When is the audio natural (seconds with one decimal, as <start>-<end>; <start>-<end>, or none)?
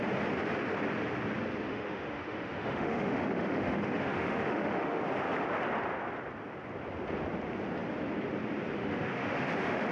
0.0-1.7; 5.0-8.8